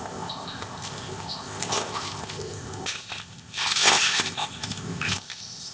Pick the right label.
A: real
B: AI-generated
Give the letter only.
B